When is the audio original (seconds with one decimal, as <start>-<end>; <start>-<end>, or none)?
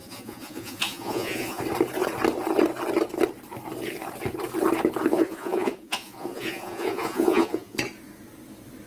1.6-5.1; 7.8-8.9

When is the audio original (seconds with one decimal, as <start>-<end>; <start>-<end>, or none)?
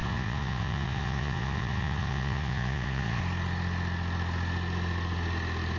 3.2-5.8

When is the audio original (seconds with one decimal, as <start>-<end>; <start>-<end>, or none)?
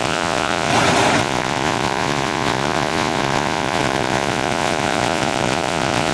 0.7-1.2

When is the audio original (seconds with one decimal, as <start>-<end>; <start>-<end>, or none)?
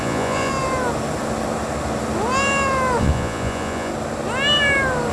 0.5-3.0; 3.9-5.1